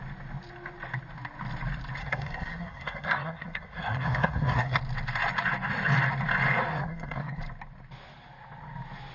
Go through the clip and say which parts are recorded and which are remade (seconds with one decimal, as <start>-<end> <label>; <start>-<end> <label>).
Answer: 0.0-2.0 recorded; 2.0-4.8 remade; 4.8-6.7 recorded; 6.7-7.4 remade; 7.4-9.1 recorded